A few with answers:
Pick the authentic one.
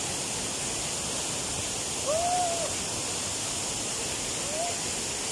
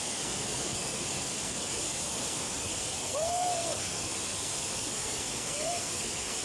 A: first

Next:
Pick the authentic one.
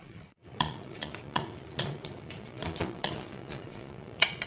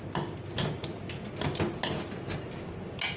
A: second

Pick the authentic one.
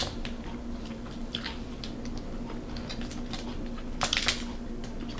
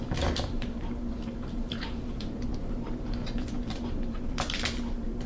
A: first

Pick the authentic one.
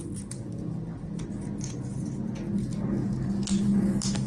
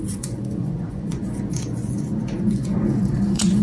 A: first